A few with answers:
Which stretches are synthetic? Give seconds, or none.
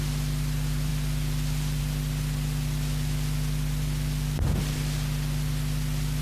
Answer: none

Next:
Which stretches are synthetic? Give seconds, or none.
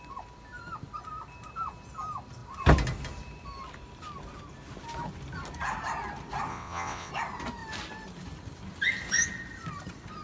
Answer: 6.5-7.1 (vocoder, WaveNeXt)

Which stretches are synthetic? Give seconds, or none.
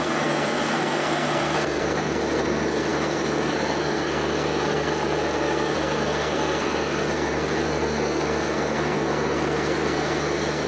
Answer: 0.0-10.7 (codec, SNAC)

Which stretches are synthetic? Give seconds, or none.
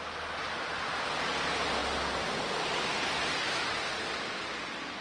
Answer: none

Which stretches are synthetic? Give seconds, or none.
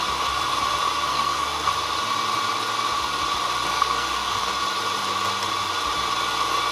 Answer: 1.1-1.7 (codec, SNAC); 3.7-4.5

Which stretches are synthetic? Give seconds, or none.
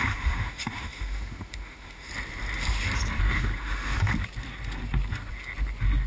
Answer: 0.0-2.1 (autoencoder, DAC-VAE); 3.2-4.1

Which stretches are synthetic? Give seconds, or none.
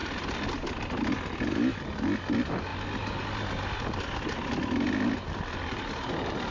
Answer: none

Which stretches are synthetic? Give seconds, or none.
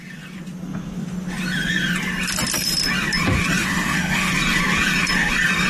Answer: 3.6-4.3 (autoencoder, DAC-VAE)